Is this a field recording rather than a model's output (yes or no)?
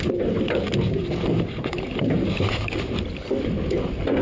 yes